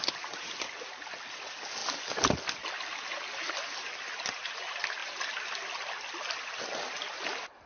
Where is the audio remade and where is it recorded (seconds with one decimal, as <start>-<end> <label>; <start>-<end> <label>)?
0.0-7.7 recorded